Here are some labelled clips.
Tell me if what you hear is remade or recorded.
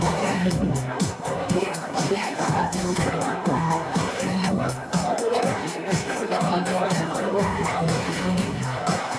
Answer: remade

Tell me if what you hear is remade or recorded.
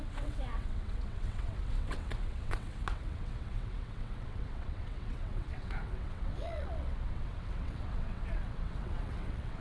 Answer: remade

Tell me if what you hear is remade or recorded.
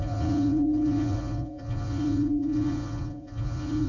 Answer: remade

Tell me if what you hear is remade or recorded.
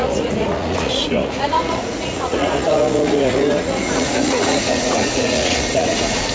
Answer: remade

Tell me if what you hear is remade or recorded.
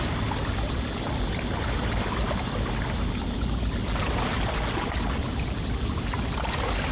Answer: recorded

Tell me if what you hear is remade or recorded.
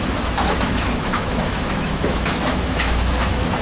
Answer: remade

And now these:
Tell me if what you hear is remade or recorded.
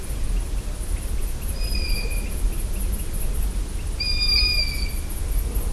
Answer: recorded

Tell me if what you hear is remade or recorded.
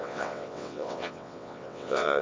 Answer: remade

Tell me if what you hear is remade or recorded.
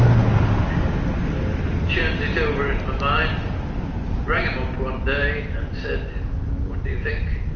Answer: recorded